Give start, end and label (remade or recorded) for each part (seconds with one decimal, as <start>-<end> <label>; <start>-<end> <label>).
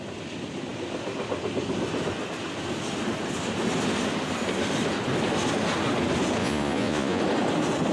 0.0-6.4 recorded; 6.4-7.2 remade; 7.2-7.9 recorded